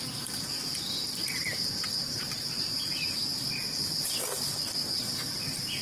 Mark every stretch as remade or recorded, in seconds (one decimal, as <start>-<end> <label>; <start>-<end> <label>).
0.0-5.8 remade